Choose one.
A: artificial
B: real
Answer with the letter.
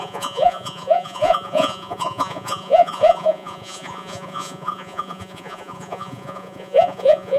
A